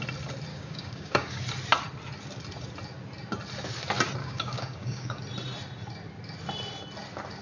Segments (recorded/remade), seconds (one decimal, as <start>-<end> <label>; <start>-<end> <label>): 0.0-0.5 recorded; 0.5-1.4 remade; 1.4-4.2 recorded; 4.2-5.2 remade; 5.2-7.4 recorded